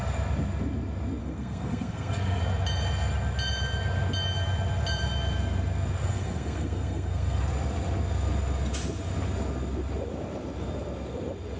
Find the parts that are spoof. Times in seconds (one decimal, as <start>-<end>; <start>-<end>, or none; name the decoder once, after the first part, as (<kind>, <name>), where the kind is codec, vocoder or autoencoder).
1.2-2.4 (codec, SNAC); 6.0-7.4